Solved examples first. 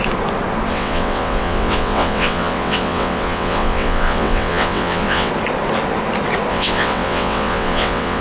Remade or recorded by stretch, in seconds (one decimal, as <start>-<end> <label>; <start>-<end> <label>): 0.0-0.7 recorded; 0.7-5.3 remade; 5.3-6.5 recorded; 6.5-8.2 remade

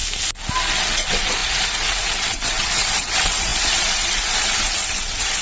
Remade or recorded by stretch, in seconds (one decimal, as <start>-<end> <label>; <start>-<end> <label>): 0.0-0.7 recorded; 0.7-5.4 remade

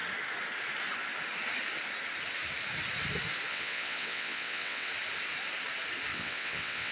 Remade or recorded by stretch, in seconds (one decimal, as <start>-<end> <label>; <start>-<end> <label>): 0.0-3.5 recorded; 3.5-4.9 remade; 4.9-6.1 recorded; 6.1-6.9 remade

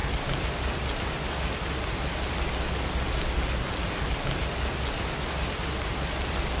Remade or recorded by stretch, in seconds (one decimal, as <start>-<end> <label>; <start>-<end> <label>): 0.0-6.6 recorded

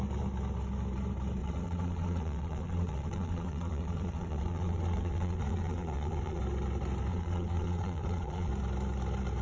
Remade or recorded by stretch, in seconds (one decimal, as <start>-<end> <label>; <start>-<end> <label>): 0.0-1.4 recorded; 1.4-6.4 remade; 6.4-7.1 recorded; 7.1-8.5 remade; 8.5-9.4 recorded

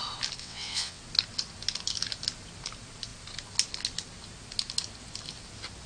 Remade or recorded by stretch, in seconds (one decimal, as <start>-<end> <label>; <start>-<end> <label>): 0.0-0.4 recorded; 0.4-1.0 remade; 1.0-5.9 recorded

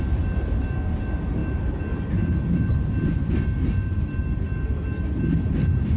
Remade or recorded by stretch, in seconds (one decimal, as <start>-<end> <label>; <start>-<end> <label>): 0.0-6.0 recorded